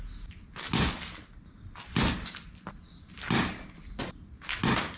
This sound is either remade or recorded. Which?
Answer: recorded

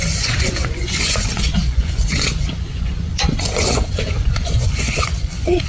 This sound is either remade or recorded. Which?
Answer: remade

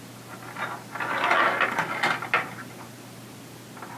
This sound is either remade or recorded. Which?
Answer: recorded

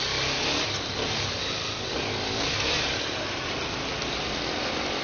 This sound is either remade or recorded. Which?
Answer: recorded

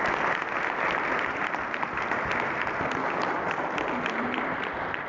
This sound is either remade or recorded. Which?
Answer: recorded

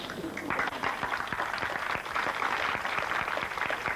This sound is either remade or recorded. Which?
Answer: recorded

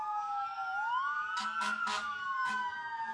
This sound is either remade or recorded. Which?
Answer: remade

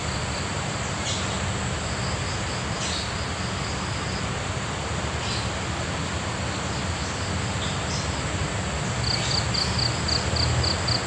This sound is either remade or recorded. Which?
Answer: recorded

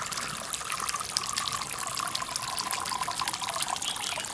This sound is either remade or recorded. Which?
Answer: recorded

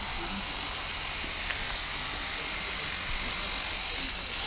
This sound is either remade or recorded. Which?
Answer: recorded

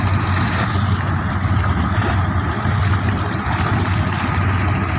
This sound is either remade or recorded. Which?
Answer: recorded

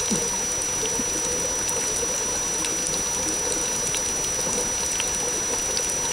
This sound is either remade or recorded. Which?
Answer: recorded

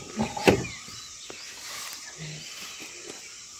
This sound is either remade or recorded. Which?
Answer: recorded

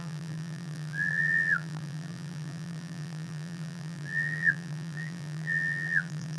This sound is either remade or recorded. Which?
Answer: remade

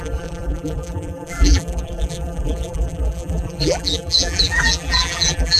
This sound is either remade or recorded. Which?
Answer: remade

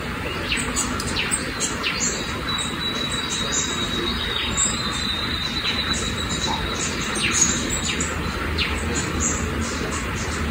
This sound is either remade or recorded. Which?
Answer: recorded